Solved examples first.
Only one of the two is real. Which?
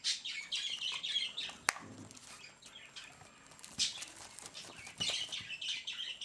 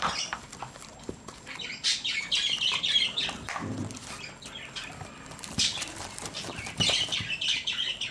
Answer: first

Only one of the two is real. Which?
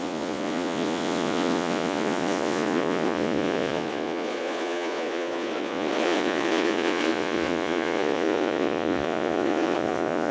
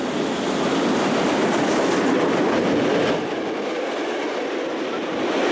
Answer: second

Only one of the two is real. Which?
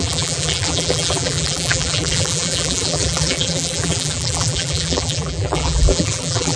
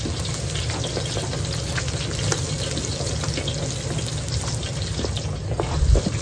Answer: second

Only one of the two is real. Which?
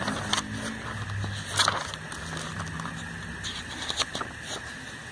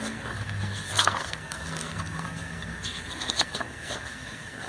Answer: first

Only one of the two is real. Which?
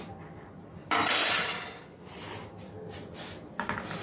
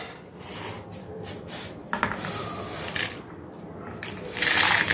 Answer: first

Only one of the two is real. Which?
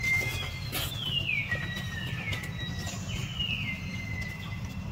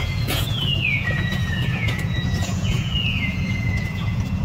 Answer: first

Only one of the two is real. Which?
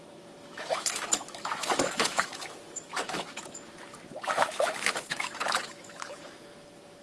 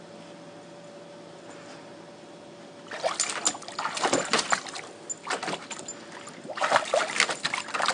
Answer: second